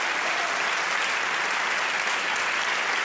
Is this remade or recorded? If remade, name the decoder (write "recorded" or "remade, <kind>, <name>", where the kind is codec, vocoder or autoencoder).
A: recorded